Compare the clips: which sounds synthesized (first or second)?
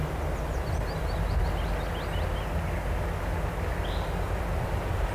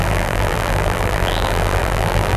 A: second